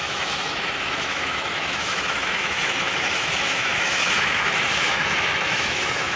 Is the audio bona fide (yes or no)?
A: no